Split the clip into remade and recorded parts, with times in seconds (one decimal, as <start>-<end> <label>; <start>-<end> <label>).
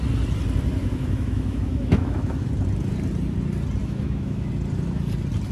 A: 0.0-0.8 recorded; 0.8-2.5 remade; 2.5-3.8 recorded; 3.8-4.5 remade; 4.5-5.5 recorded